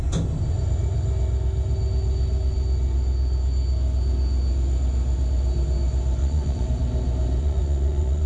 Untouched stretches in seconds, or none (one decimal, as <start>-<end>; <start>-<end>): 0.0-6.2; 6.7-7.4